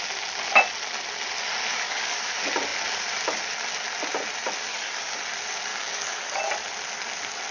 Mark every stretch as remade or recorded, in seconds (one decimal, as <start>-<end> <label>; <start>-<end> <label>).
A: 0.0-1.7 recorded; 1.7-2.3 remade; 2.3-4.7 recorded; 4.7-5.2 remade; 5.2-5.7 recorded; 5.7-6.4 remade; 6.4-7.5 recorded